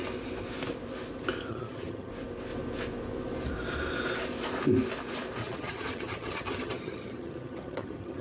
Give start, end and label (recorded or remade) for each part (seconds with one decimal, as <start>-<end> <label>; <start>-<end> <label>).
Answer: 0.0-1.5 recorded; 1.5-2.1 remade; 2.1-5.4 recorded; 5.4-8.2 remade